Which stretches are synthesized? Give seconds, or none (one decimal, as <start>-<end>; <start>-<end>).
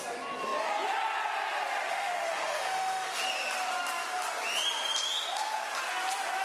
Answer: 1.9-3.2